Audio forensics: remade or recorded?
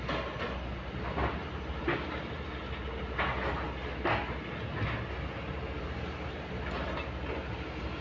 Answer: recorded